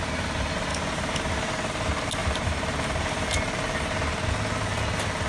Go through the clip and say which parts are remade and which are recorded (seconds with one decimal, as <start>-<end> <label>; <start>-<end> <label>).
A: 0.0-0.7 recorded; 0.7-1.3 remade; 1.3-2.2 recorded; 2.2-3.3 remade; 3.3-5.3 recorded